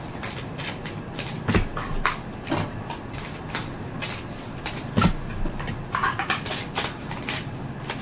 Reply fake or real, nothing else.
real